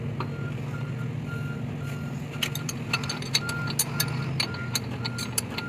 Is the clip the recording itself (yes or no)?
yes